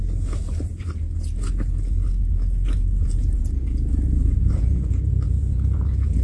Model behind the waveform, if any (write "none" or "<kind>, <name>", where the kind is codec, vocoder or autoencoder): none